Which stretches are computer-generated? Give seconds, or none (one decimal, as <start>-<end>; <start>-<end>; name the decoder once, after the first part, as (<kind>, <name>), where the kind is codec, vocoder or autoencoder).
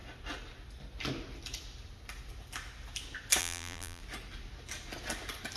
3.4-4.0 (vocoder, BigVGAN v2)